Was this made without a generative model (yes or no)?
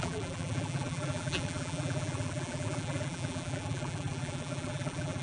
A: no